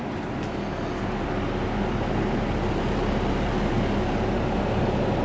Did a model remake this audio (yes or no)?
no